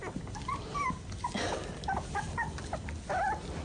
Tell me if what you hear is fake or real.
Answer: real